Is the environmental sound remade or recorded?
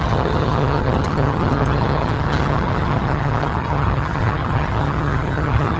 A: remade